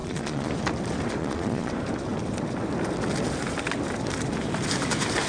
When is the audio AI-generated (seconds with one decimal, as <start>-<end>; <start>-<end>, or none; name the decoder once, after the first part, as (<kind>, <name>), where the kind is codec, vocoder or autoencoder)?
0.0-0.5 (vocoder, Vocos); 1.2-1.7